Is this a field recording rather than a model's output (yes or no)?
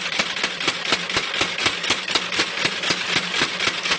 yes